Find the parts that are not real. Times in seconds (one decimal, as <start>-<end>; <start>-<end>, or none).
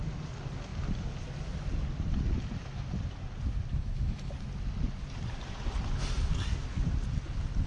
3.7-4.3